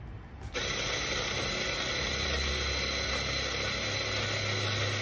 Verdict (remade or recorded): recorded